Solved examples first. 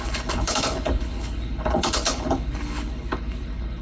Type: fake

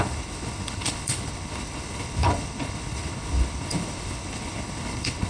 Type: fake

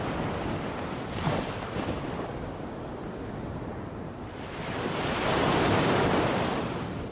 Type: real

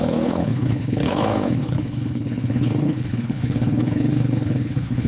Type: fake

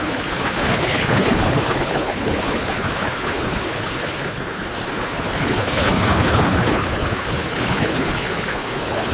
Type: fake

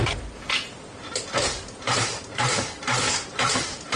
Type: real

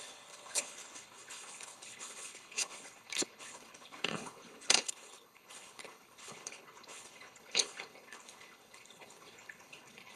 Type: fake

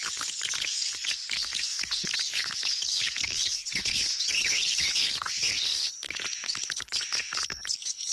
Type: fake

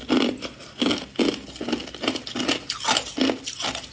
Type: real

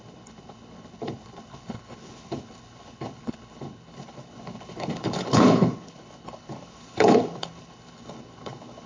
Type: fake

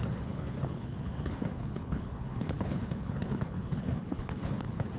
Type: fake